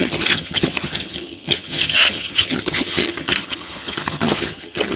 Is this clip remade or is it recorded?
remade